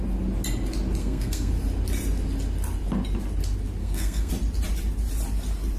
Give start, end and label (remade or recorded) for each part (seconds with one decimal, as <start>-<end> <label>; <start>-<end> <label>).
0.0-1.0 recorded; 1.0-1.5 remade; 1.5-3.8 recorded; 3.8-4.3 remade; 4.3-5.8 recorded